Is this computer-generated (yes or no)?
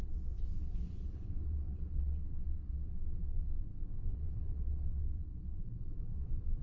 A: yes